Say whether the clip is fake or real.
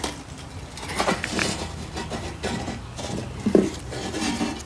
real